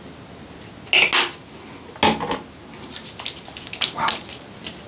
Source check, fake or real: real